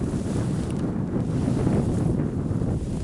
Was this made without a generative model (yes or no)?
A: yes